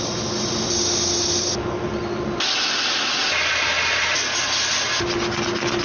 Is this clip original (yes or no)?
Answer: yes